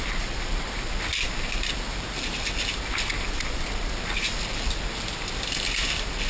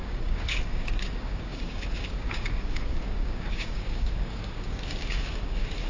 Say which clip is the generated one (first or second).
second